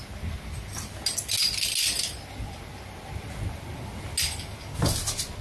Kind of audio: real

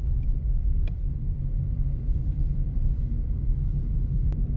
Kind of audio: fake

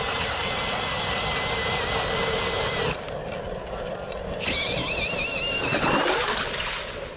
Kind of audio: real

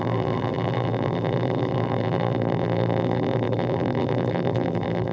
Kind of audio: fake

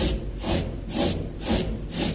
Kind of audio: real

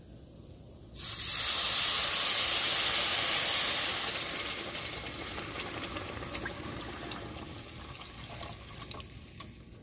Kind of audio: real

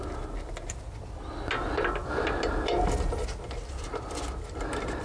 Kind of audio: real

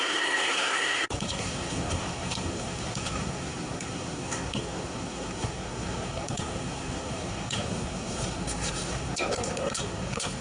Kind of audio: fake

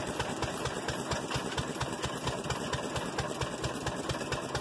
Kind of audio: real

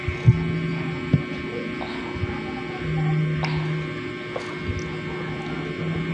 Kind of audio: real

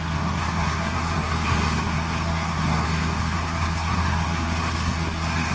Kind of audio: fake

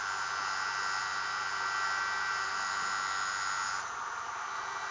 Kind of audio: real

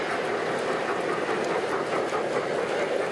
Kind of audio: real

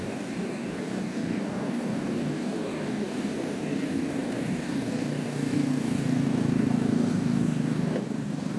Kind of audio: fake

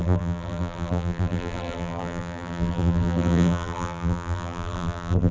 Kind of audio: fake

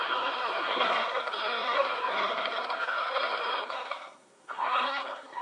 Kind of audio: fake